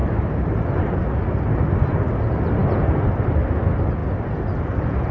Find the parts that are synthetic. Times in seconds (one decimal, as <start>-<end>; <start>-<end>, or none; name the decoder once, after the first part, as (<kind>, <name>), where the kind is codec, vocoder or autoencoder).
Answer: 0.0-1.1 (vocoder, BigVGAN v2)